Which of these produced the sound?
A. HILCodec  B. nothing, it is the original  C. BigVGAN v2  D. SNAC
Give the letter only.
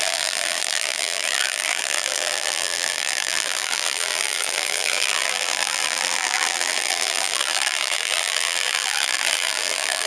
C